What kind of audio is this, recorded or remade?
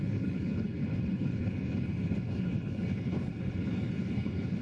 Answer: remade